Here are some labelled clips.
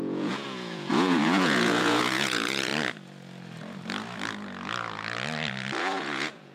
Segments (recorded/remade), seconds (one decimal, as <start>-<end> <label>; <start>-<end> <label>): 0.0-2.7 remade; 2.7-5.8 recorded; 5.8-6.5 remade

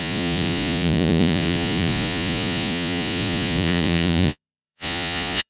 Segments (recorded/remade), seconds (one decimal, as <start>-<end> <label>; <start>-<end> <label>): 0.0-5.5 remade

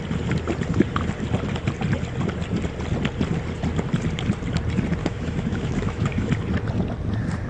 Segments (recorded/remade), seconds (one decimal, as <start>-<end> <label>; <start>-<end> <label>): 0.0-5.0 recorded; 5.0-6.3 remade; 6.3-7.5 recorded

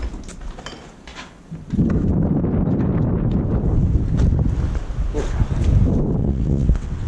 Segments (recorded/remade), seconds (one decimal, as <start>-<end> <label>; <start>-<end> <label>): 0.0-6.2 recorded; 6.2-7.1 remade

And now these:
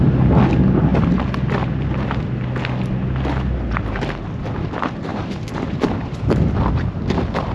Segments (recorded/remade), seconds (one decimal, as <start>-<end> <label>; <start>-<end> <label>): 0.0-5.1 recorded; 5.1-6.0 remade; 6.0-7.5 recorded

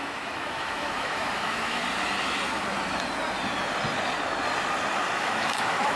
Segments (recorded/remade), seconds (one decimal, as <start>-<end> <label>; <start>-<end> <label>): 0.0-1.8 remade; 1.8-5.2 recorded; 5.2-6.0 remade